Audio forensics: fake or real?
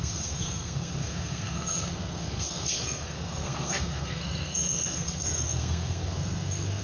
fake